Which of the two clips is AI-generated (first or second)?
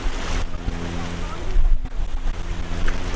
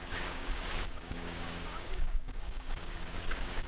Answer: second